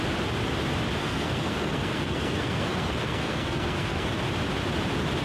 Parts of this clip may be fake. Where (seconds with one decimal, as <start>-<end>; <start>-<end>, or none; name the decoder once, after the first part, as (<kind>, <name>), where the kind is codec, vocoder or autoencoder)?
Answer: 1.0-4.1 (codec, SNAC)